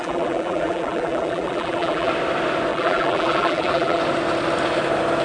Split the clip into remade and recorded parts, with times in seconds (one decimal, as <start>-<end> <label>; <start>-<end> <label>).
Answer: 0.0-2.1 remade; 2.1-2.7 recorded; 2.7-4.0 remade; 4.0-5.2 recorded